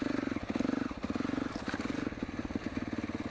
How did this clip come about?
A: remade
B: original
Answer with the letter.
B